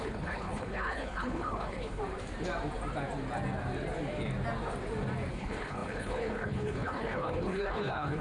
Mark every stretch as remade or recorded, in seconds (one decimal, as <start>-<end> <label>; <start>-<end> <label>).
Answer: 0.0-2.0 remade; 2.0-5.3 recorded; 5.3-8.2 remade